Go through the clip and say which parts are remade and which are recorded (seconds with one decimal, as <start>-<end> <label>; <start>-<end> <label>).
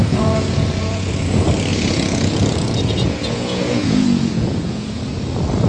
0.0-1.1 remade; 1.1-1.7 recorded; 1.7-5.1 remade; 5.1-5.7 recorded